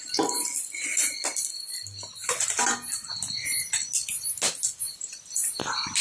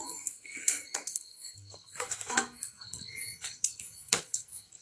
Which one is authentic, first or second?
first